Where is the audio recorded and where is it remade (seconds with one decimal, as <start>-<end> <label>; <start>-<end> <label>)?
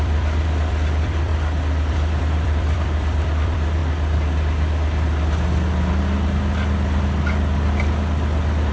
0.0-1.3 remade; 1.3-1.9 recorded; 1.9-3.8 remade; 3.8-8.7 recorded